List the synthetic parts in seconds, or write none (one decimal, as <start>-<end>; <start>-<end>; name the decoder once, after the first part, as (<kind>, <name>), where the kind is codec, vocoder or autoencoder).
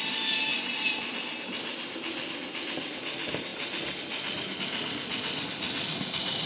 none